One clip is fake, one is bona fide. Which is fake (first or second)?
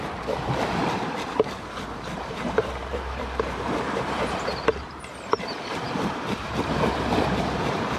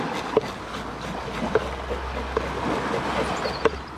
first